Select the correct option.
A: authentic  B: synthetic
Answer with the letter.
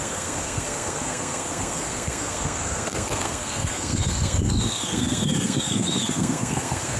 B